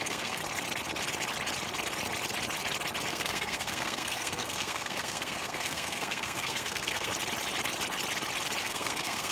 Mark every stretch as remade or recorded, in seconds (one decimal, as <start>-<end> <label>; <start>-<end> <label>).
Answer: 0.0-0.4 remade; 0.4-3.1 recorded; 3.1-7.1 remade; 7.1-8.6 recorded; 8.6-9.3 remade